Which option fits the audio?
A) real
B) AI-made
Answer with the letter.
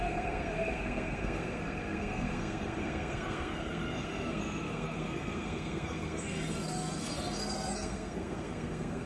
B